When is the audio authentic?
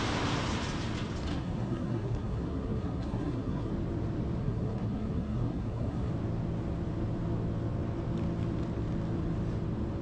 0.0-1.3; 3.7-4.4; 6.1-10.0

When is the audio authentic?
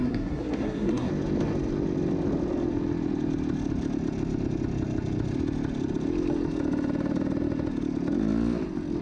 1.1-9.0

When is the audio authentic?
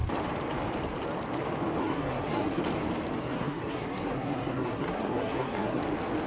0.0-1.8; 2.6-3.2; 5.8-6.3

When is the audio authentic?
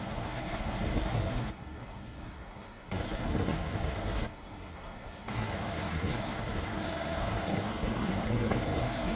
none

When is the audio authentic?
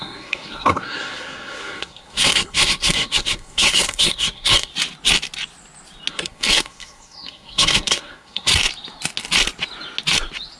4.7-6.1; 8.5-10.6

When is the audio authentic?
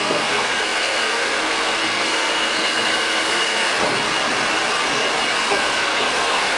3.7-5.5